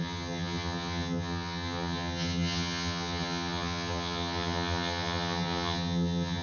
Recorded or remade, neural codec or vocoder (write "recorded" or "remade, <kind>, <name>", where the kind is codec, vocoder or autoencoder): remade, vocoder, HiFi-GAN